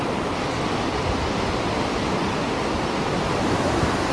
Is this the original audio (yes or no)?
yes